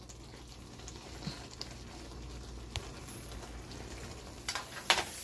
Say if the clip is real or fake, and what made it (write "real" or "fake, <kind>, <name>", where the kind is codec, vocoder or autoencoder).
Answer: real